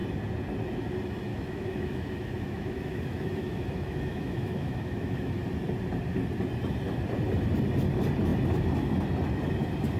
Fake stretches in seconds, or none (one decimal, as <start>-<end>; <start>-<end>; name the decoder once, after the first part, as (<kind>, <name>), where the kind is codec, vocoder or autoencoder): 1.3-5.3 (autoencoder, DAC-VAE)